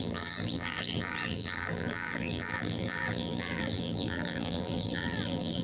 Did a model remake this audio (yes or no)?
yes